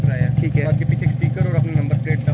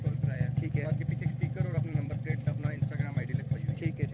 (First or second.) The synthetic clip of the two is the second